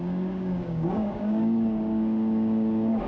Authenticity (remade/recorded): remade